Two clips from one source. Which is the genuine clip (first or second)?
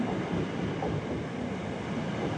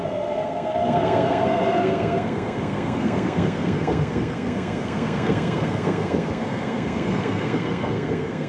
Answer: first